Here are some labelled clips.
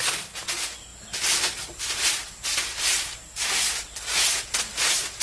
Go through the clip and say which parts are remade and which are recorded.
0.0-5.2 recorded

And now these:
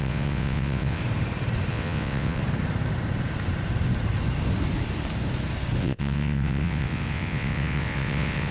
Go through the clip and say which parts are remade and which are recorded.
0.0-1.0 remade; 1.0-1.7 recorded; 1.7-2.4 remade; 2.4-5.8 recorded; 5.8-8.5 remade

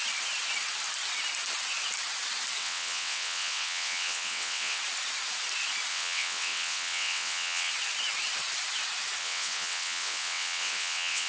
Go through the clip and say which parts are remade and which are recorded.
0.0-2.6 recorded; 2.6-4.8 remade; 4.8-5.9 recorded; 5.9-7.7 remade; 7.7-9.2 recorded; 9.2-11.3 remade

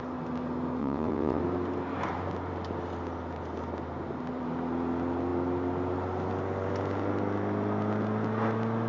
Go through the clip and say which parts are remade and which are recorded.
0.0-0.8 recorded; 0.8-1.4 remade; 1.4-8.9 recorded